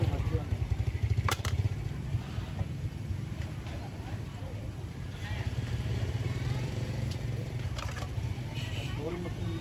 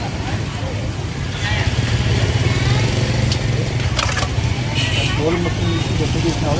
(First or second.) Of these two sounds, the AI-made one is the first